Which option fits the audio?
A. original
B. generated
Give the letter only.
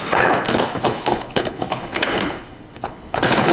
B